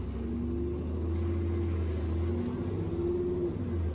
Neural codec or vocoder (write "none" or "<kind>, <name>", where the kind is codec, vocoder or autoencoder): none